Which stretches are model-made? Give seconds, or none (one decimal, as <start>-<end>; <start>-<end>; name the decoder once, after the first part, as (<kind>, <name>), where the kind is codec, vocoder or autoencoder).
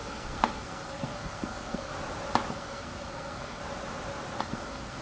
0.0-1.9 (codec, SNAC); 2.5-3.6; 4.4-5.0